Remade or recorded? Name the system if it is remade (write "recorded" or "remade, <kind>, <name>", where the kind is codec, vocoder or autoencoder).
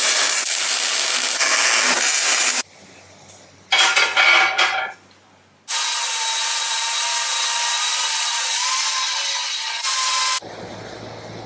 recorded